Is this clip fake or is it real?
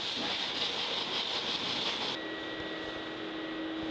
real